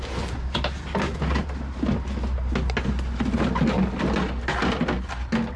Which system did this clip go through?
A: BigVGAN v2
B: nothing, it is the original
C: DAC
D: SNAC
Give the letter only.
B